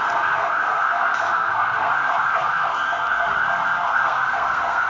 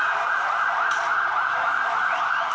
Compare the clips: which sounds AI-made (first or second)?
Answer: first